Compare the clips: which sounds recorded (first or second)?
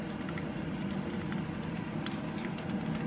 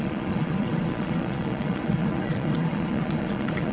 first